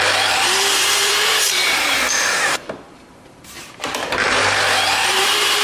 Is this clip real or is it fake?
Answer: fake